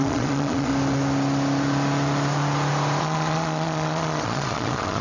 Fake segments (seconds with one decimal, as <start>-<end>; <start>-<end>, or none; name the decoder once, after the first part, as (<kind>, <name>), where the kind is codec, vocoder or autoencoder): 0.0-0.7 (vocoder, Vocos); 3.0-5.0